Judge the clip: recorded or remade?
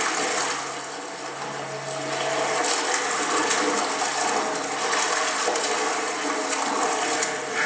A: recorded